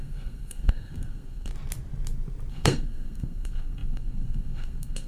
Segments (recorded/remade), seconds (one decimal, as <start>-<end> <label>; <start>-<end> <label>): 0.0-1.5 remade; 1.5-2.5 recorded; 2.5-5.1 remade